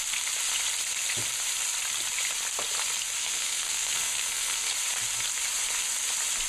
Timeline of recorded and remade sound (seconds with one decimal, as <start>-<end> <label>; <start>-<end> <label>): 0.0-3.2 recorded; 3.2-4.7 remade; 4.7-6.5 recorded